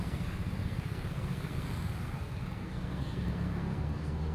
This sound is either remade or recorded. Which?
remade